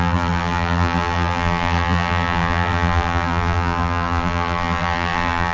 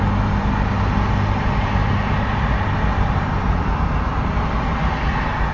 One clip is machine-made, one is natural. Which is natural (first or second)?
second